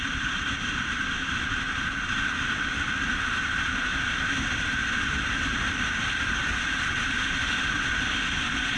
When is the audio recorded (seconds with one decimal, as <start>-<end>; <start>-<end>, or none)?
3.9-4.5